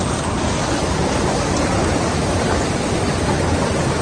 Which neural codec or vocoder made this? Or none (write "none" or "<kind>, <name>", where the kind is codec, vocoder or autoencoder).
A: none